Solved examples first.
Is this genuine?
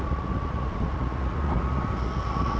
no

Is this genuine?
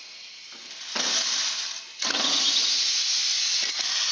yes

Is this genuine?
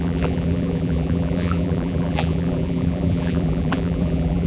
no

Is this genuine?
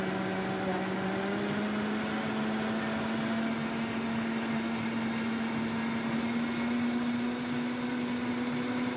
yes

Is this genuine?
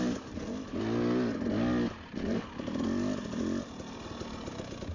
yes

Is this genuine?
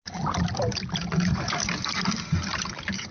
yes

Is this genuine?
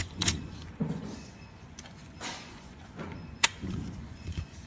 no